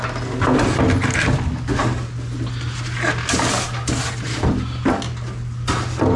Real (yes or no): yes